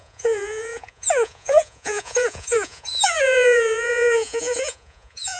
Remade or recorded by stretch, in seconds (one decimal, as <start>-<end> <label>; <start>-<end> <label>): 0.0-5.4 remade